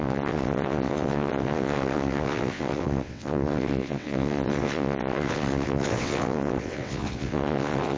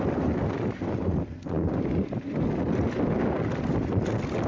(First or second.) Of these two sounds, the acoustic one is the second